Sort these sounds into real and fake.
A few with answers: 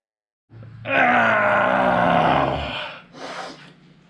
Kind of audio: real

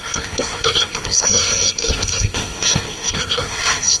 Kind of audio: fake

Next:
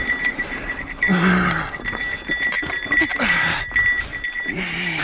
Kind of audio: real